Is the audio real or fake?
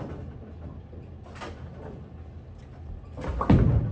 real